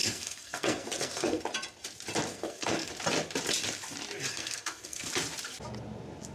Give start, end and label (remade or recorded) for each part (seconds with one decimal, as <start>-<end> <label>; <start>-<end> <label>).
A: 0.0-1.4 remade; 1.4-2.3 recorded; 2.3-2.9 remade; 2.9-4.3 recorded; 4.3-5.1 remade; 5.1-6.3 recorded